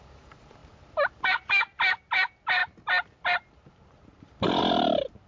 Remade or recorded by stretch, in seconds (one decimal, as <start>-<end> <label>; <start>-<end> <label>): 0.0-5.3 recorded